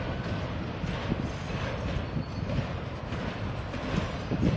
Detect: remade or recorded recorded